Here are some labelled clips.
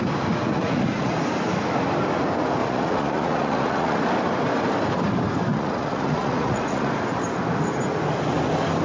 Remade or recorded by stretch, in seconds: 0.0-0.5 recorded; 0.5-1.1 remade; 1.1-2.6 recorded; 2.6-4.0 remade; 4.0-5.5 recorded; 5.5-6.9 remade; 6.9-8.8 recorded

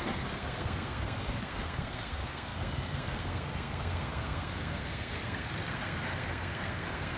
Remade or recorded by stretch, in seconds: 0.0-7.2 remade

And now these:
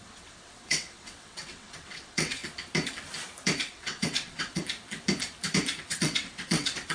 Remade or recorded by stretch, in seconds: 0.0-2.4 remade; 2.4-3.6 recorded; 3.6-4.6 remade; 4.6-5.8 recorded; 5.8-6.9 remade

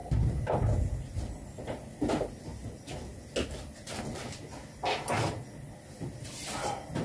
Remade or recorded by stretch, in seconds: 0.0-7.0 recorded